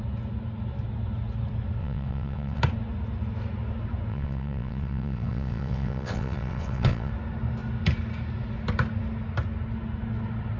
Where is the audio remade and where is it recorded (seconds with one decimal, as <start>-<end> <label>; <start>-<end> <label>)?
0.0-1.8 recorded; 1.8-2.6 remade; 2.6-4.1 recorded; 4.1-7.1 remade; 7.1-10.6 recorded